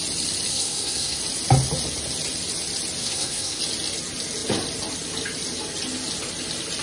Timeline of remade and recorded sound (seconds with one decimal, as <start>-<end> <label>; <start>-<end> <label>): 0.0-0.5 recorded; 0.5-1.2 remade; 1.2-3.0 recorded; 3.0-3.6 remade; 3.6-6.8 recorded